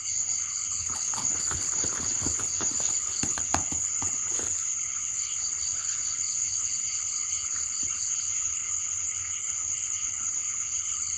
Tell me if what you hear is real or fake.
fake